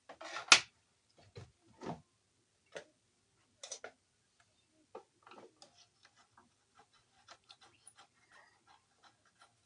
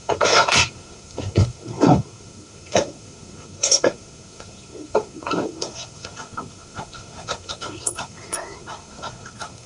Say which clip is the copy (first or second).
second